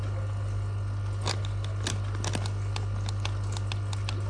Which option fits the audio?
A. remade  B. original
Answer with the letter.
B